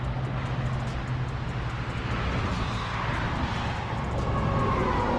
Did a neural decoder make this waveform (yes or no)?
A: no